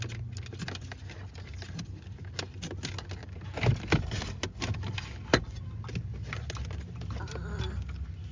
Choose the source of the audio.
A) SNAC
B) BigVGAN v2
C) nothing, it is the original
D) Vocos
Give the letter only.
C